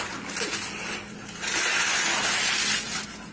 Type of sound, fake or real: real